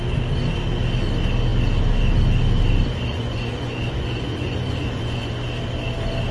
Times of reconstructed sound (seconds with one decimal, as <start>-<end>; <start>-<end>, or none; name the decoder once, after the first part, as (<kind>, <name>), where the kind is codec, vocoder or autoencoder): 3.1-5.3 (vocoder, Vocos)